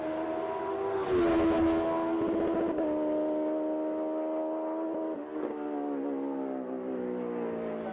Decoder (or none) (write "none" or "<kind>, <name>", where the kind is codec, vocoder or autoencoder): none